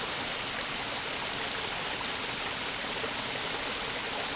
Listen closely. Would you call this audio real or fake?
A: real